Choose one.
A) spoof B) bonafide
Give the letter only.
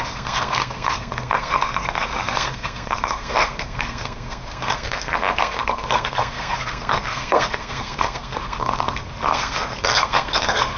A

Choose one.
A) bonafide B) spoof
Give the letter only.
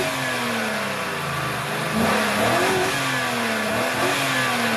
A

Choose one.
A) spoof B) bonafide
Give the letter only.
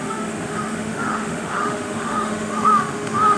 A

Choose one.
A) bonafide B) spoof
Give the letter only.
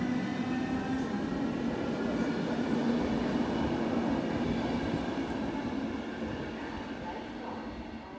A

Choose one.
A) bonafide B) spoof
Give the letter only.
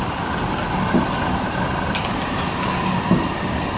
A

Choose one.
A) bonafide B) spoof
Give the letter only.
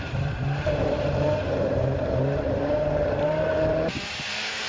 B